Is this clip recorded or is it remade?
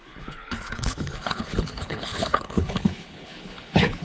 remade